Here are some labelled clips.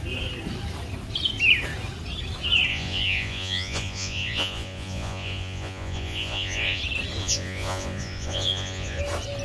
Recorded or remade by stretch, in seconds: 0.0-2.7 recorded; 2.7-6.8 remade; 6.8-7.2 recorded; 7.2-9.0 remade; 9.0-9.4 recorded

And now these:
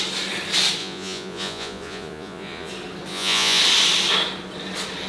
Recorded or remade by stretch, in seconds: 0.0-0.8 recorded; 0.8-2.7 remade; 2.7-3.1 recorded; 3.1-3.6 remade; 3.6-5.1 recorded

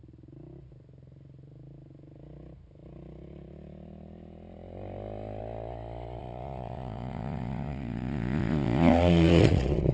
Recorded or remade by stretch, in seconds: 0.0-6.2 recorded; 6.2-9.9 remade

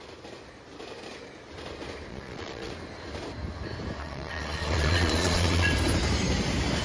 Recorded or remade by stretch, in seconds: 0.0-2.1 recorded; 2.1-2.7 remade; 2.7-4.0 recorded; 4.0-5.7 remade; 5.7-6.8 recorded

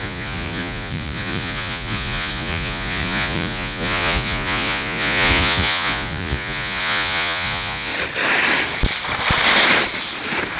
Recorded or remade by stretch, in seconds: 0.0-7.9 remade; 7.9-10.6 recorded

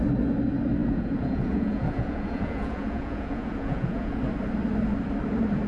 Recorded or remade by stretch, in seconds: 0.0-0.8 recorded; 0.8-4.2 remade; 4.2-5.7 recorded

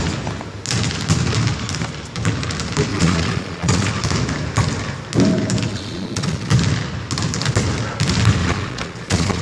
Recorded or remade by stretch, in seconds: 0.0-2.9 recorded; 2.9-3.9 remade; 3.9-5.7 recorded; 5.7-6.5 remade; 6.5-8.4 recorded; 8.4-9.4 remade